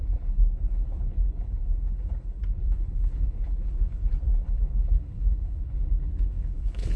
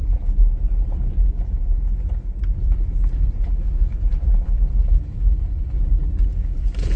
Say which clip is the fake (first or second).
first